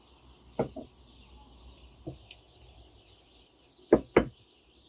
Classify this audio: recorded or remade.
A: recorded